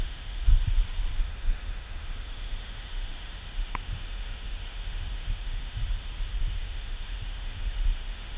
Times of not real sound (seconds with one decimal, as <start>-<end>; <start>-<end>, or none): 0.0-0.5; 1.2-5.8; 6.4-8.4